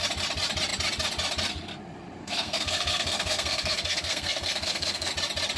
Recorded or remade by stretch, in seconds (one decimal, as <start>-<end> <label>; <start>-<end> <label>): 0.0-2.2 recorded; 2.2-5.1 remade; 5.1-5.6 recorded